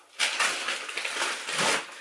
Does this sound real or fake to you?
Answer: real